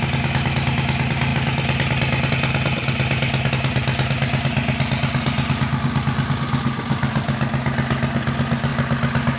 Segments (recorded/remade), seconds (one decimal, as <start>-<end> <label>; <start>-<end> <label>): 0.0-9.4 recorded